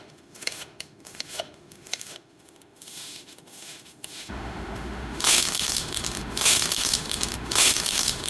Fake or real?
fake